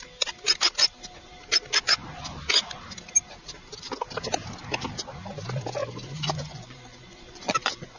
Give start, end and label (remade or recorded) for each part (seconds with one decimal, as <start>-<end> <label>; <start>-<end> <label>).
0.0-5.8 recorded; 5.8-8.0 remade